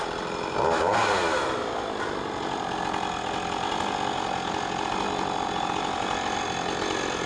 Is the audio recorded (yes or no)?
yes